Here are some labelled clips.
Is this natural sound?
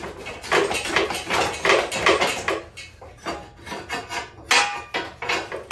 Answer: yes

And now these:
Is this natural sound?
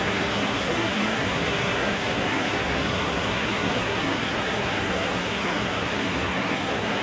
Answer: no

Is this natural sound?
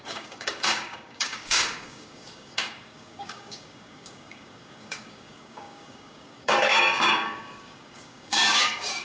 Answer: no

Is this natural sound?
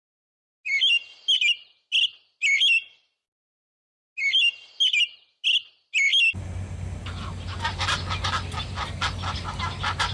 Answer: yes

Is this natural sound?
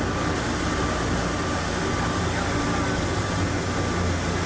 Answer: yes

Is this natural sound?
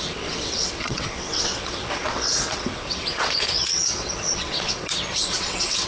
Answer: no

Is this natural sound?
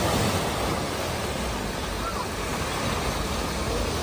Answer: yes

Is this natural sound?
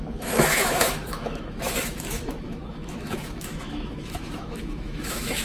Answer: no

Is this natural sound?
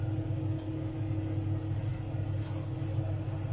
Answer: yes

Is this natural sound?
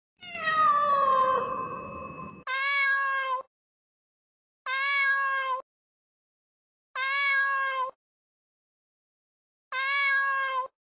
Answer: yes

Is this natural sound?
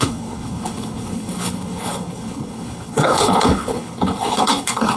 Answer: no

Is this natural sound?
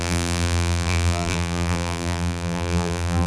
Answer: no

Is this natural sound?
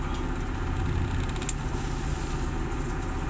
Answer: yes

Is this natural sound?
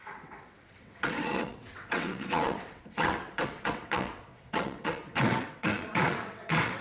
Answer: no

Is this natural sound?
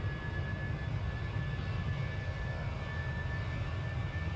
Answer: yes